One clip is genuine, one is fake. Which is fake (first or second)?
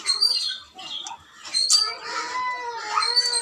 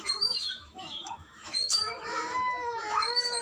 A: second